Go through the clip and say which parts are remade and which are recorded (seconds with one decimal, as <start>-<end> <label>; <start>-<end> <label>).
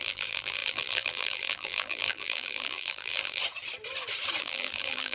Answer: 0.0-3.4 remade; 3.4-4.4 recorded; 4.4-5.1 remade